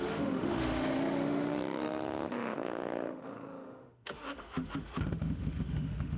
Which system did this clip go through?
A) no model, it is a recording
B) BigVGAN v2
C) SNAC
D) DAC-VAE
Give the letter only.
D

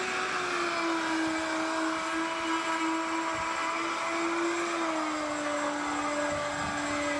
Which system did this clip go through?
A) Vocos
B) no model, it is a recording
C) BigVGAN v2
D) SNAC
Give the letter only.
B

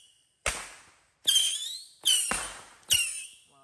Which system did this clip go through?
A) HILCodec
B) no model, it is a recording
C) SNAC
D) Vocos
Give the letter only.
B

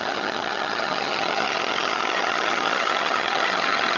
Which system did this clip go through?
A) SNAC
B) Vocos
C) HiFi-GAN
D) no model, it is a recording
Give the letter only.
C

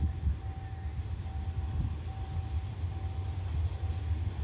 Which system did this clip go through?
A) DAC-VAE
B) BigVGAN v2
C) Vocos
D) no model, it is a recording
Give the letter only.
D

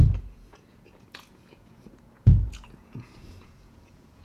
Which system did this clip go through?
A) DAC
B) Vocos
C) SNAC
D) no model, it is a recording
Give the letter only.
B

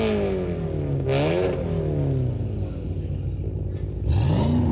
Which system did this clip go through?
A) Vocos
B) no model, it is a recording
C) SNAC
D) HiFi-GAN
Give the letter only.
B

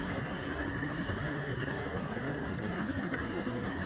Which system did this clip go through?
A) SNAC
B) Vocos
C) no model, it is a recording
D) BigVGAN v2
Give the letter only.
A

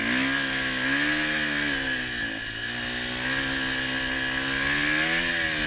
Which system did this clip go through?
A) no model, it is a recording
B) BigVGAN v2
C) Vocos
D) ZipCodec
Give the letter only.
A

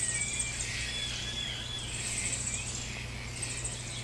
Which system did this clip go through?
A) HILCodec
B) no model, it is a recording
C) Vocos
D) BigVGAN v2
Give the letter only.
B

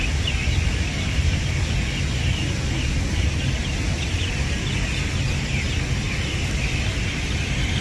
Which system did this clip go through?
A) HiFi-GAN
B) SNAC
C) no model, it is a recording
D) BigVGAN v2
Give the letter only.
C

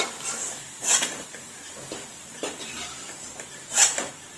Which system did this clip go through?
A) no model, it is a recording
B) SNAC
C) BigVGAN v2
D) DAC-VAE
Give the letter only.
C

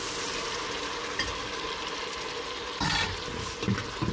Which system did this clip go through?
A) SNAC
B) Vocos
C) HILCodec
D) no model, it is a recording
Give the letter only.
D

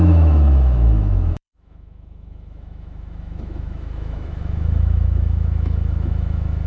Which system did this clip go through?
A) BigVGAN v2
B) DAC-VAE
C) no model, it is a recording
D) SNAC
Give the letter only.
B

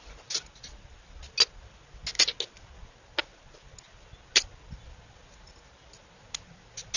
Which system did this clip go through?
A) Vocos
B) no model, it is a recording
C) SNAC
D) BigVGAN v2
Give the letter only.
B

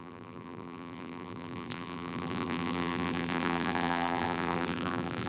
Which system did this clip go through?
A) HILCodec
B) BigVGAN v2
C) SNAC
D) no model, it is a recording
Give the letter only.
B